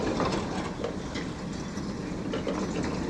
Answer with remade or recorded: recorded